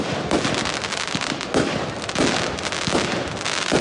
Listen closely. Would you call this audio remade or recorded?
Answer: recorded